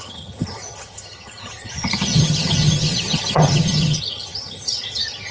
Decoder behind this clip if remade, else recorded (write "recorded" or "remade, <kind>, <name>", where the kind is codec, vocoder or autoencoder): remade, vocoder, HiFi-GAN